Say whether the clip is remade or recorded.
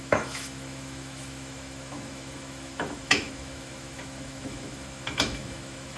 remade